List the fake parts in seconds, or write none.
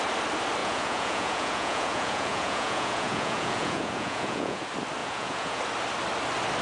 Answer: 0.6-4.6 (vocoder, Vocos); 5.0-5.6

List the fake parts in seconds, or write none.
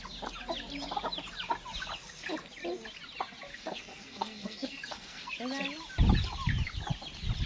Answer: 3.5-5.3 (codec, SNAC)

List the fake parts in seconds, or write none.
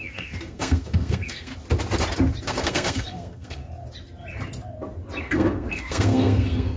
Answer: 0.0-1.5 (codec, SNAC); 2.4-3.6; 5.2-6.8